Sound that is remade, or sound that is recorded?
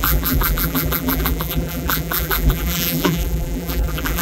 remade